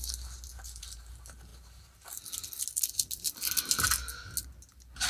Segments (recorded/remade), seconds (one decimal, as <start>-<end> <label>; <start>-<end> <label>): 0.0-0.5 recorded; 0.5-1.1 remade; 1.1-1.5 recorded; 1.5-2.2 remade; 2.2-5.1 recorded